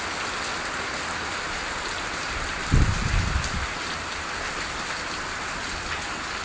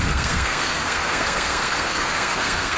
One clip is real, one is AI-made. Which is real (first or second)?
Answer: first